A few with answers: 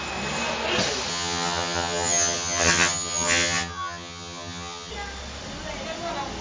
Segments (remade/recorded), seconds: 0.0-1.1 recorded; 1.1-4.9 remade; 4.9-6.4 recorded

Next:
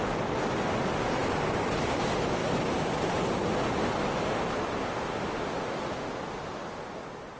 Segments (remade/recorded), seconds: 0.0-7.4 recorded

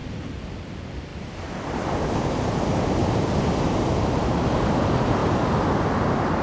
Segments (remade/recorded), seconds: 0.0-6.4 recorded

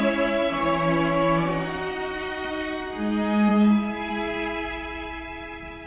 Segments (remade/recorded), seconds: 0.0-5.9 recorded

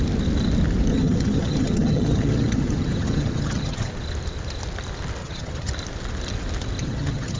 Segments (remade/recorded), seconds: 0.0-0.9 recorded; 0.9-3.9 remade; 3.9-5.2 recorded; 5.2-5.7 remade; 5.7-6.8 recorded; 6.8-7.4 remade